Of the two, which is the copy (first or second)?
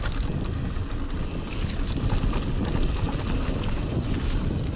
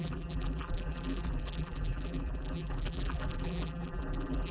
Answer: second